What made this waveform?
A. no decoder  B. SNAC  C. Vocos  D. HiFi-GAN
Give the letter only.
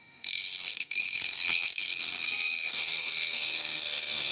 B